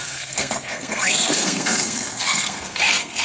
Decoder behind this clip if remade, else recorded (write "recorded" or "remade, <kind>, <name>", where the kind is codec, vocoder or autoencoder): remade, codec, SNAC